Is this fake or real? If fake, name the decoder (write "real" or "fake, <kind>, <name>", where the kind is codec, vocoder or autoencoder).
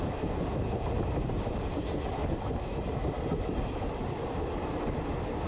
real